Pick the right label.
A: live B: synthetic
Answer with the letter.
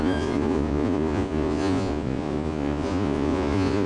B